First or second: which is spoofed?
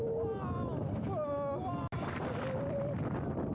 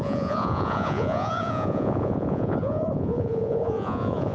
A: second